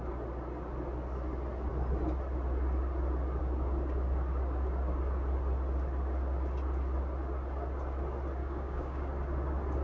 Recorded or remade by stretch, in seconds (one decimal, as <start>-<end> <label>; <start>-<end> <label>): 0.0-8.4 recorded; 8.4-9.1 remade; 9.1-9.8 recorded